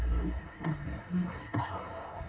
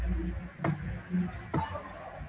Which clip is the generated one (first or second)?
first